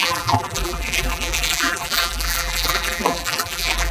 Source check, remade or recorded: remade